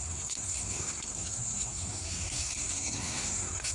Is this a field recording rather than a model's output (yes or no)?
no